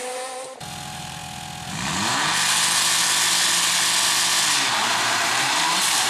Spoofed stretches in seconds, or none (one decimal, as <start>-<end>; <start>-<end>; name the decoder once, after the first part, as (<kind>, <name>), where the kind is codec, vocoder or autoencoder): 0.0-1.2 (vocoder, BigVGAN v2); 4.7-6.1